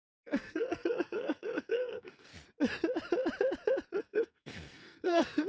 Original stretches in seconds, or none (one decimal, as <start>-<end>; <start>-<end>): 2.3-4.0

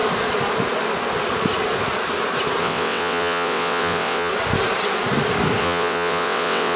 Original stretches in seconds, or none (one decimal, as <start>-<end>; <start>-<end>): 0.0-2.6; 4.3-5.6